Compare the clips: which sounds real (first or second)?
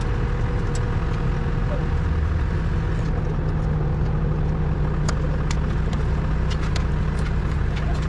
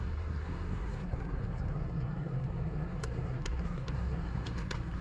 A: first